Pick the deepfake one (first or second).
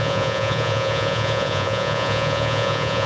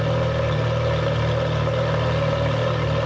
first